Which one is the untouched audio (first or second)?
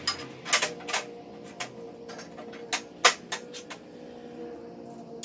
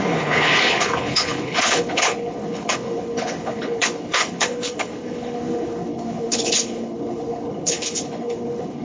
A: first